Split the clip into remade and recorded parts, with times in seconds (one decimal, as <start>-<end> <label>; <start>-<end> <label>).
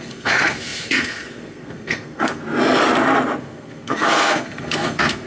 0.0-2.4 remade; 2.4-3.4 recorded; 3.4-5.3 remade